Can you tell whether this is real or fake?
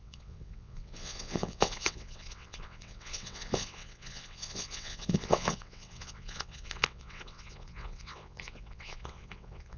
fake